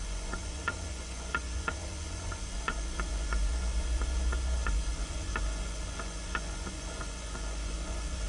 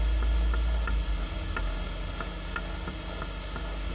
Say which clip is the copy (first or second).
first